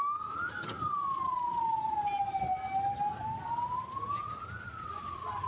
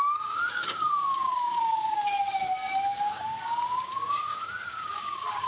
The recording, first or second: first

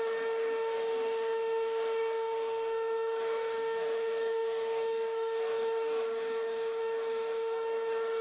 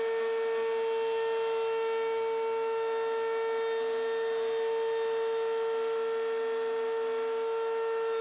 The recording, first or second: second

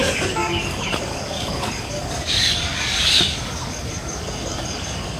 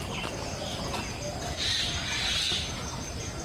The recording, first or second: second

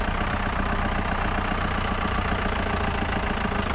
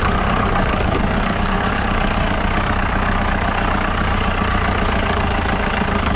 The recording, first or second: first